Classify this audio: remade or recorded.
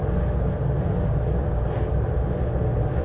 recorded